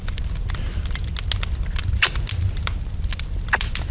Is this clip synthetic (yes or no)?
no